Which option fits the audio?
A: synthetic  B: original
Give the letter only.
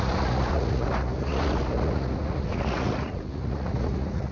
A